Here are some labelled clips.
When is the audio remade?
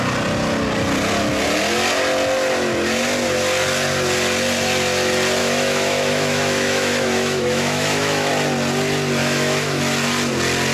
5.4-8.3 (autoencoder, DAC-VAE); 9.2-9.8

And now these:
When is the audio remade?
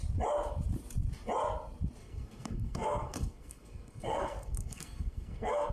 2.0-5.7 (codec, SNAC)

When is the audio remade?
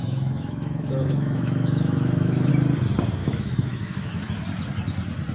0.0-2.5 (autoencoder, DAC-VAE); 3.2-4.2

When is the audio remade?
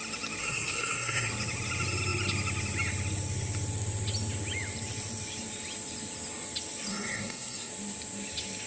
0.4-1.3 (codec, SNAC); 6.9-7.7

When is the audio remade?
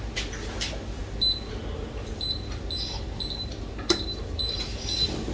none